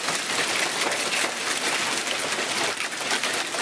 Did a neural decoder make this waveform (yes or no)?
no